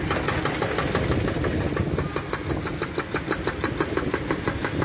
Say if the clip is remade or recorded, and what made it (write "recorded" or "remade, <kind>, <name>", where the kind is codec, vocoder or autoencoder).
recorded